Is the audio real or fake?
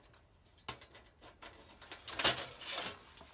real